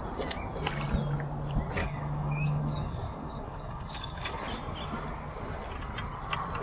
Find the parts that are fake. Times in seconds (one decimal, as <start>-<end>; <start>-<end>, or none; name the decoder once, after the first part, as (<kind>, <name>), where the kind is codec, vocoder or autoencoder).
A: 1.8-4.4 (codec, DAC)

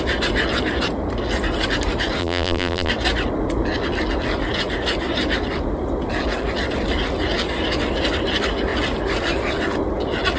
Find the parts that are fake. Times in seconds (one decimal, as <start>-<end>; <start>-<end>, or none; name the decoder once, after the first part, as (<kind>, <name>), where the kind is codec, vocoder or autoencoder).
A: 2.2-2.9 (vocoder, BigVGAN v2)

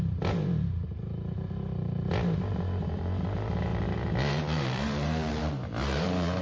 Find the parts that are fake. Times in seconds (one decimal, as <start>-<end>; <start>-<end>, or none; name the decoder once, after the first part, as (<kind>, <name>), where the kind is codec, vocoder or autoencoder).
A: 0.0-6.4 (vocoder, BigVGAN v2)

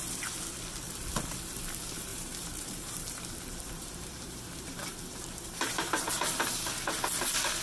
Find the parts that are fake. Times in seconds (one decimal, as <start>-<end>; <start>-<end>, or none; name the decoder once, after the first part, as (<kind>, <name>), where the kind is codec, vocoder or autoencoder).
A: 2.1-6.1 (vocoder, BigVGAN v2)